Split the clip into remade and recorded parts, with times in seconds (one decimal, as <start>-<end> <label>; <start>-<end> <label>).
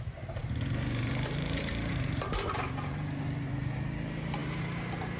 0.0-5.2 remade